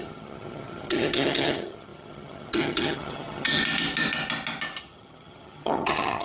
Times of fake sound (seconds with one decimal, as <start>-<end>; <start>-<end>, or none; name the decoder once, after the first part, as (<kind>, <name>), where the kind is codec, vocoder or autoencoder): 0.0-3.6 (vocoder, HiFi-GAN); 4.8-6.2